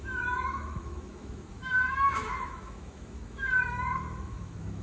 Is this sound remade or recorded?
remade